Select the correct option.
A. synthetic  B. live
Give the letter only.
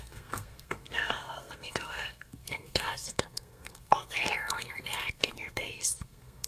A